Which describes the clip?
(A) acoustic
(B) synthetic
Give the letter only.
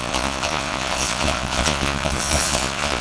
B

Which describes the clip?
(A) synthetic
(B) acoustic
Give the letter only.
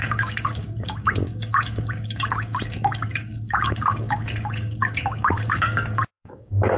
A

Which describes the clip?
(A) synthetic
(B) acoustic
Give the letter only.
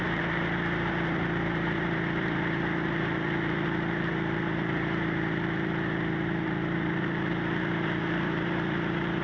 A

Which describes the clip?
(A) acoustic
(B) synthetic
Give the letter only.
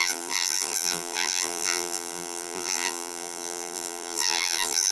B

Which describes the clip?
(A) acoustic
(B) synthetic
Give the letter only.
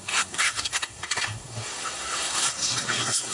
B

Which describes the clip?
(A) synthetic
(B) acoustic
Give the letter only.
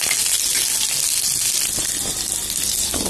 B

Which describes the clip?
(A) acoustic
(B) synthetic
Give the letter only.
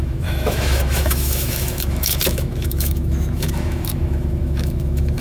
B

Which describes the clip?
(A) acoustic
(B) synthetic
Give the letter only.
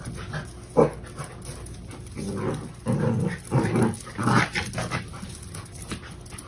A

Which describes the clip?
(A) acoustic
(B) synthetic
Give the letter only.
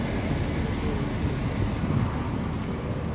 A